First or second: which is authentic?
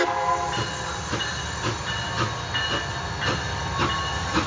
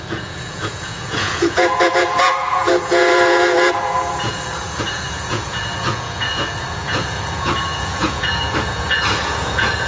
first